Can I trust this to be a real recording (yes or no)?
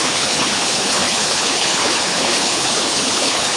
no